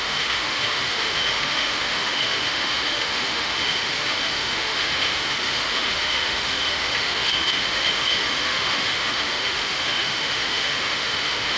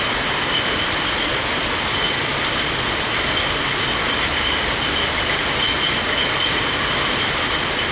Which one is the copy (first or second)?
first